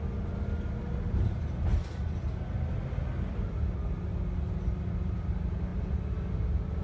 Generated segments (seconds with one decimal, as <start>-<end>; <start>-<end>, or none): none